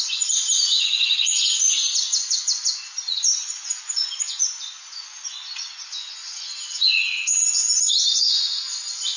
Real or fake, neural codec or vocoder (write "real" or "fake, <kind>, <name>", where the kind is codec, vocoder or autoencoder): fake, vocoder, Vocos